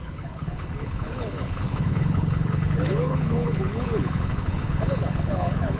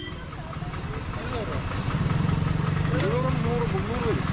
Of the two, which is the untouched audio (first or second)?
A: second